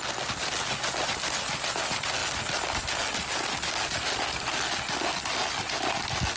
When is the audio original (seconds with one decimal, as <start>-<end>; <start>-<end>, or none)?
0.0-6.4